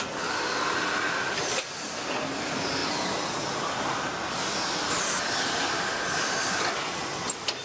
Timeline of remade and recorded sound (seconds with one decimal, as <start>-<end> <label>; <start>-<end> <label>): 0.0-4.2 recorded; 4.2-6.9 remade; 6.9-7.6 recorded